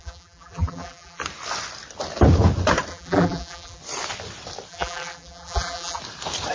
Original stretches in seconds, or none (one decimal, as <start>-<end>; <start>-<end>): 1.2-2.9; 3.8-4.7; 6.0-6.5